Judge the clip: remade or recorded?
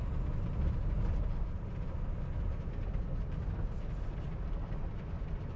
recorded